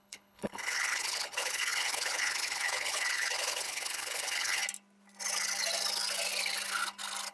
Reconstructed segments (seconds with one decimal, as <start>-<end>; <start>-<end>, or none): 0.0-4.6